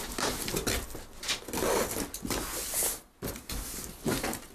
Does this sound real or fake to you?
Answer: real